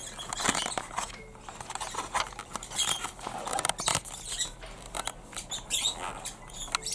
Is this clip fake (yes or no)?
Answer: no